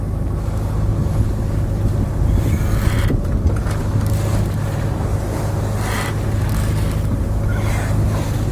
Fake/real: real